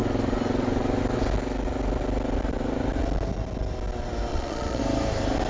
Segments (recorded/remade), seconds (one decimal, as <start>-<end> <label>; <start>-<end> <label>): 0.0-4.3 recorded; 4.3-4.8 remade; 4.8-5.5 recorded